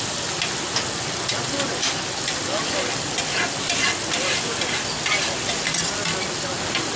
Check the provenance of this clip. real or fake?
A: real